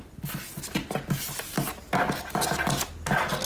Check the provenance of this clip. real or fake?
real